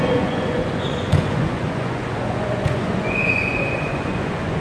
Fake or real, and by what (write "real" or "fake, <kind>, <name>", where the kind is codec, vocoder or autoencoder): fake, vocoder, Vocos